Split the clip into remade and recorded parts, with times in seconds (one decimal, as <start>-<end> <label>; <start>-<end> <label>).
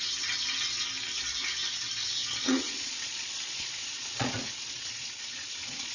0.0-2.2 recorded; 2.2-5.9 remade